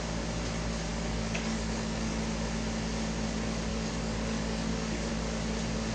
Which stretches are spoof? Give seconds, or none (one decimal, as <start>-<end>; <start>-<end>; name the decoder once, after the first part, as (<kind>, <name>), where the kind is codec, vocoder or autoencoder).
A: 0.9-2.2 (codec, DAC); 3.7-5.1